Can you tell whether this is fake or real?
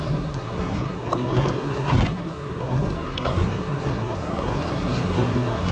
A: fake